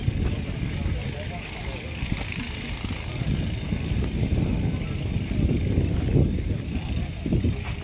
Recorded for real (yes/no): yes